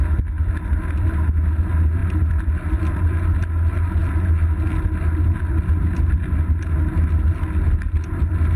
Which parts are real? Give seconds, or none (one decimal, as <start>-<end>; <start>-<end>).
0.0-8.6